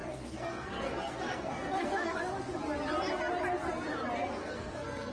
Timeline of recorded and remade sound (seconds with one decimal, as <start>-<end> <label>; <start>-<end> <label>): 0.0-2.2 remade; 2.2-4.4 recorded; 4.4-5.1 remade